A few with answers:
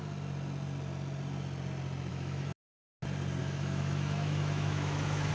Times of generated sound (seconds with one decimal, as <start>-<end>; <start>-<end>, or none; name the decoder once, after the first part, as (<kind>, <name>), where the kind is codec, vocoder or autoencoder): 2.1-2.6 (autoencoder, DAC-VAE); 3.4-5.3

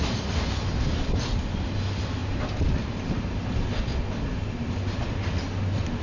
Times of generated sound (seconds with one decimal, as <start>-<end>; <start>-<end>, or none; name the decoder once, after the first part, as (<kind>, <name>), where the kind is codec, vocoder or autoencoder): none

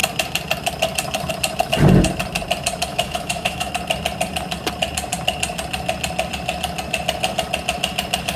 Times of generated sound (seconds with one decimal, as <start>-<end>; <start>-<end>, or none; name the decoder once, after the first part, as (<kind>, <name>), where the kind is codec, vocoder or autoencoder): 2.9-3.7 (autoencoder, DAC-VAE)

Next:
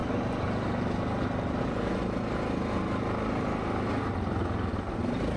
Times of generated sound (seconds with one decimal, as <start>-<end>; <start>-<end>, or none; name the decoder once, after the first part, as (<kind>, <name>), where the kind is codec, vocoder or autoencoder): none